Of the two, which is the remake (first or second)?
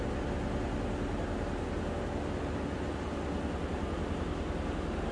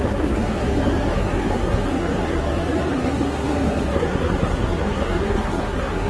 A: second